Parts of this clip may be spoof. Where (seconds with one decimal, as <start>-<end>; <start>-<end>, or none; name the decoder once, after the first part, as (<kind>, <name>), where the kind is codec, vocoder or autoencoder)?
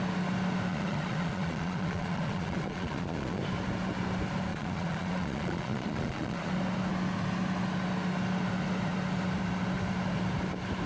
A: 0.7-3.4 (vocoder, Vocos); 4.5-6.5